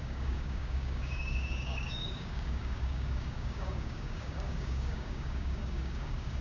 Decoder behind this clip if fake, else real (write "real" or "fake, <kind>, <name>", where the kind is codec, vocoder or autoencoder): fake, codec, DAC